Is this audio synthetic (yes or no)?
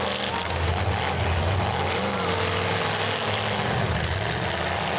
no